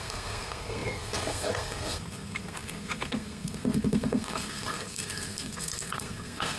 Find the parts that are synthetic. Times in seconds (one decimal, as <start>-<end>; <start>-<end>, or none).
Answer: 0.0-6.6